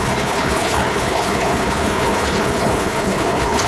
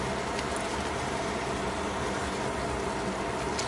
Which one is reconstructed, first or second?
first